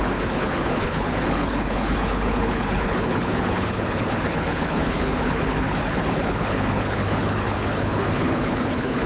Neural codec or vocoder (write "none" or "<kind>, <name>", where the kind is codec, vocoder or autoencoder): codec, HILCodec